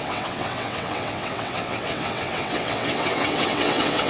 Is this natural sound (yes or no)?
no